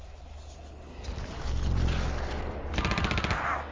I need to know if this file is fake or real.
real